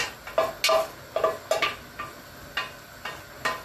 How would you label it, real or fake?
real